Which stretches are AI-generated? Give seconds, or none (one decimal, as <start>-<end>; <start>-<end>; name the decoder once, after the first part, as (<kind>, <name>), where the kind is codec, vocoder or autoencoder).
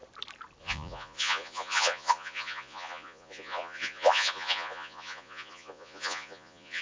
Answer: 0.6-6.8 (vocoder, Vocos)